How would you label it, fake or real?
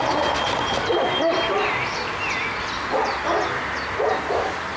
real